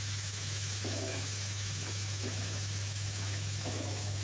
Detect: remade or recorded remade